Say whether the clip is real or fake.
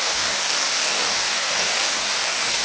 fake